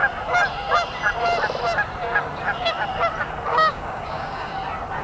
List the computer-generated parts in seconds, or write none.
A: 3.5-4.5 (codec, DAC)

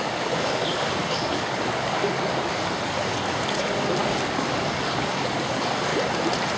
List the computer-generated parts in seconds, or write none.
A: 0.0-5.9 (codec, DAC)

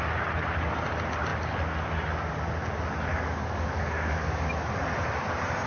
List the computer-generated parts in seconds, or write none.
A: 3.1-4.5 (codec, DAC)

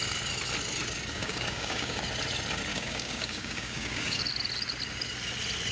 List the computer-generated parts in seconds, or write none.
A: 1.1-2.0 (codec, DAC); 2.7-4.2

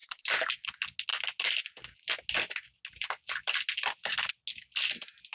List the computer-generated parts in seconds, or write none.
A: 0.0-0.5 (codec, DAC)